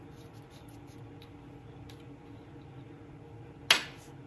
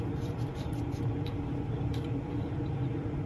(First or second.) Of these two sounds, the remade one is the second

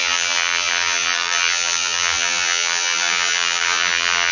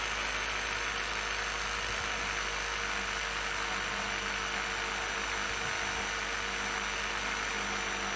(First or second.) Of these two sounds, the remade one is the first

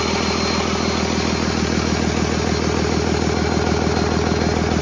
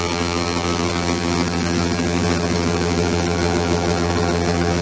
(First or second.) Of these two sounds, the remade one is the second